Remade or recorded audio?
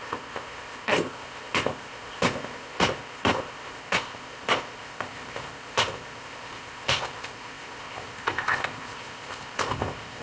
remade